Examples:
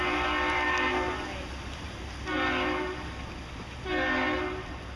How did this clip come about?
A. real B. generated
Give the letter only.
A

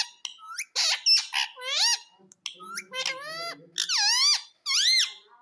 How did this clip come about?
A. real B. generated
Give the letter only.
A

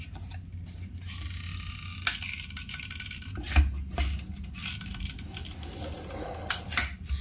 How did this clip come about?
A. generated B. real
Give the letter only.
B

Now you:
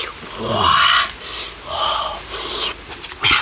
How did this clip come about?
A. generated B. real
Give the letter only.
B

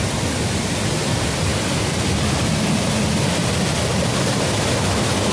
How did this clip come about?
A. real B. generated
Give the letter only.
A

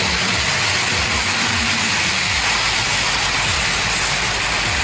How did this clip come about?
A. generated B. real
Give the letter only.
B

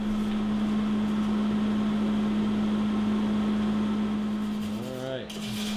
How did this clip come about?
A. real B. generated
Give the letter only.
A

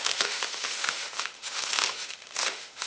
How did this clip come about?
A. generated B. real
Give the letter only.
A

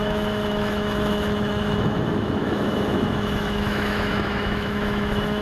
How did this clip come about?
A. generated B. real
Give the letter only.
A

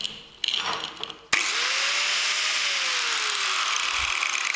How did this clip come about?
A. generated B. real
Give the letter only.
B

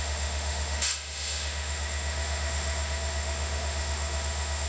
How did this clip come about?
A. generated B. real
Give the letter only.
A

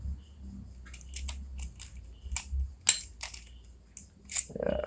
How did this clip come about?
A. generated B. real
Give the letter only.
B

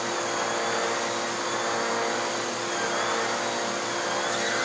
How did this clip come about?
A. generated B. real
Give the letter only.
B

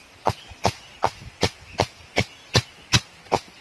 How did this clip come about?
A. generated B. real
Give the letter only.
B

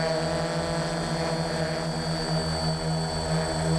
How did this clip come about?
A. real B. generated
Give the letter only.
A